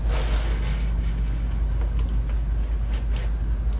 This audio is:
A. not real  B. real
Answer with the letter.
B